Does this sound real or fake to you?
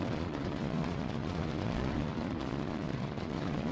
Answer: fake